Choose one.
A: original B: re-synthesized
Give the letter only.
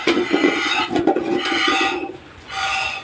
B